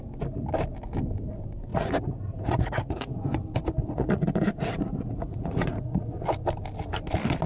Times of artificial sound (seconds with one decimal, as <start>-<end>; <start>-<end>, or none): 1.7-3.2; 3.8-6.2